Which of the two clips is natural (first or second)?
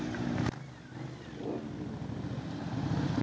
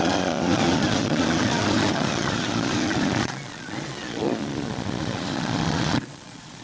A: first